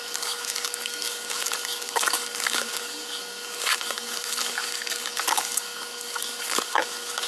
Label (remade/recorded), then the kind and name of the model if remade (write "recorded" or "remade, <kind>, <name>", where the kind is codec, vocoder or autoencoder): remade, codec, DAC